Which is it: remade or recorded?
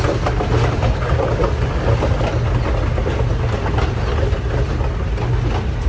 recorded